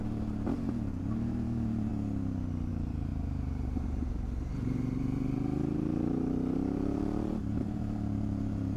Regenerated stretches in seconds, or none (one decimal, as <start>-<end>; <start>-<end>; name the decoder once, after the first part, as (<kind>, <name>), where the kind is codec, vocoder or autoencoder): 0.0-1.9 (vocoder, BigVGAN v2); 2.7-8.8